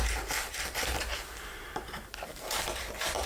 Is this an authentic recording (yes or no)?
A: no